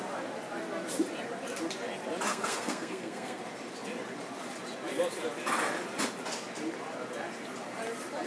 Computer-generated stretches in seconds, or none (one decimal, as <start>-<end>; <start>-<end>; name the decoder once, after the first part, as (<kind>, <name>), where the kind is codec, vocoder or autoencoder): 2.3-3.4 (codec, SNAC)